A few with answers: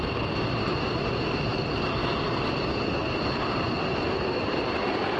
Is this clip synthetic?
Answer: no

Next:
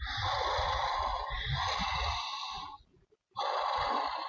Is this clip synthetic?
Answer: no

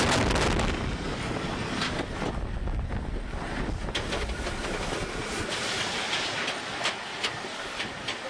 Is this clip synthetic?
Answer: no